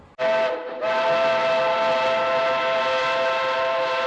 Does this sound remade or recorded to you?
recorded